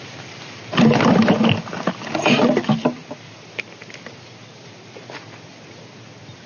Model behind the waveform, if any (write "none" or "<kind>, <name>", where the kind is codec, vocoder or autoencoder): none